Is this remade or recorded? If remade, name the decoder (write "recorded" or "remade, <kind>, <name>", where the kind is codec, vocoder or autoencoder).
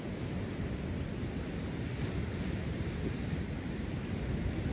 recorded